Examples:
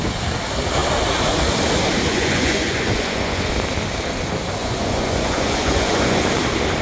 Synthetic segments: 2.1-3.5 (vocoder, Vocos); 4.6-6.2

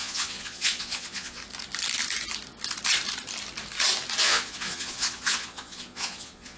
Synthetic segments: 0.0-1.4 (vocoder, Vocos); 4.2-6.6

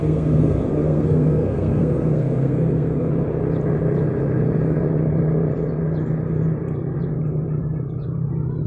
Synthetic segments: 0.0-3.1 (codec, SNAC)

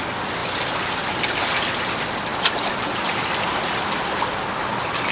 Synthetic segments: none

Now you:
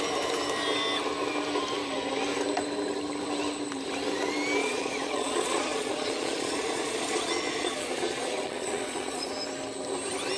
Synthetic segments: 4.6-9.3 (vocoder, Vocos)